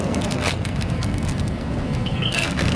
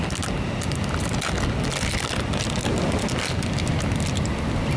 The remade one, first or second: first